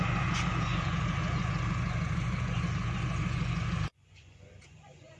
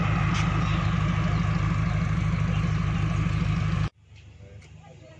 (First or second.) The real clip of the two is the second